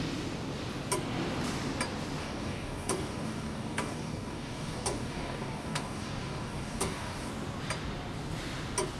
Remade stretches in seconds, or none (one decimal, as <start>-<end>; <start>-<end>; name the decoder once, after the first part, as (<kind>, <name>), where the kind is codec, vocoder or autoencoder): 2.2-7.3 (codec, DAC)